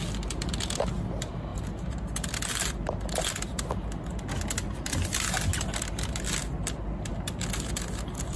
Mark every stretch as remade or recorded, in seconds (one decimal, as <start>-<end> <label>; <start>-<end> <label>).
0.0-8.4 recorded